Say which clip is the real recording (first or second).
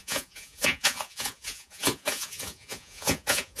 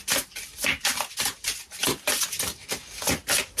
second